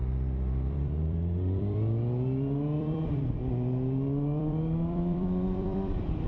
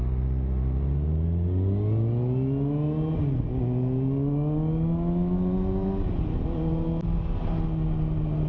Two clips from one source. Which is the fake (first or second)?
first